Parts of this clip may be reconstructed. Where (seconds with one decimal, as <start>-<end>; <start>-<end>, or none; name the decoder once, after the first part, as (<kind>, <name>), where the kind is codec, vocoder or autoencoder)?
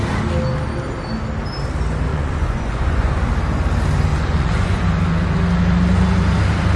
2.1-3.3 (vocoder, Vocos); 4.1-4.8